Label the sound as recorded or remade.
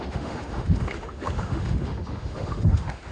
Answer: remade